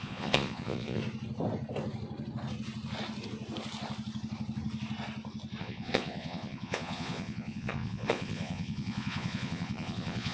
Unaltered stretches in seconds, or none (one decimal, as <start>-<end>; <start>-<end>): 1.0-5.6